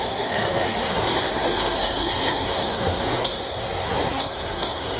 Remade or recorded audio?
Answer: remade